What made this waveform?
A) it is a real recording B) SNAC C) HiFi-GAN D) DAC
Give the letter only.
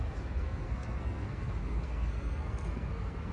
B